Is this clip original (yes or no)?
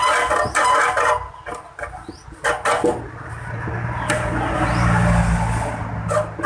yes